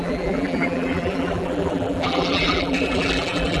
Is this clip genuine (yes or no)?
no